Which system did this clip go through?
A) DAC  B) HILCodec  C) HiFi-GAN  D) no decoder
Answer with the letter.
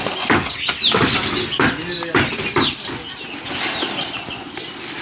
D